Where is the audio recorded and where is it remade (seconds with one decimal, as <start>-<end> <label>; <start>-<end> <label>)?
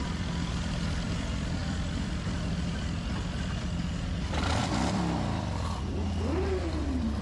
0.0-7.2 remade